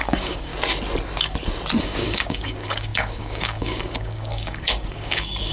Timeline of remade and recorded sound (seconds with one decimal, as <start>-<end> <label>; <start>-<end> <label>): 0.0-0.5 remade; 0.5-1.8 recorded; 1.8-5.5 remade